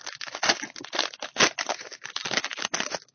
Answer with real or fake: real